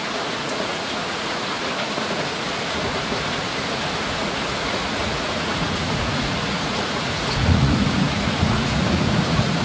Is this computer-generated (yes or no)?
yes